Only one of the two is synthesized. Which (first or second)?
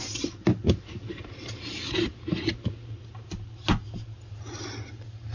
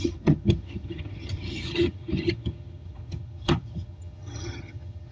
second